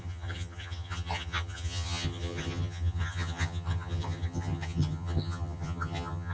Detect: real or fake fake